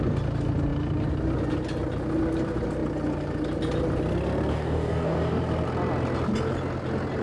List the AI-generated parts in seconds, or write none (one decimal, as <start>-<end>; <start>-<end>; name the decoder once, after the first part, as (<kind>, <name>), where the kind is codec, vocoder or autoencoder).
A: 4.5-5.4 (codec, DAC)